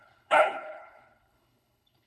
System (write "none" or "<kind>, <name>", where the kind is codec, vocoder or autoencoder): codec, HILCodec